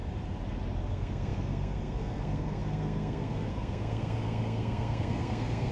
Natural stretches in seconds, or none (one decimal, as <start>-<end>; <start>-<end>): 0.0-0.9